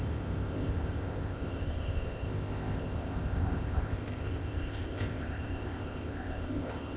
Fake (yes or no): yes